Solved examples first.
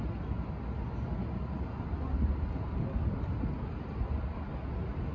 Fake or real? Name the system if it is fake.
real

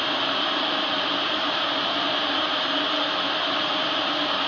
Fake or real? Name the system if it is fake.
fake, vocoder, BigVGAN v2